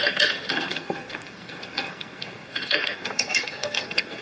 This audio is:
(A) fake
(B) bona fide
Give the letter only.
A